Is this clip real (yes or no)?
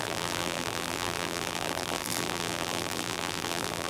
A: no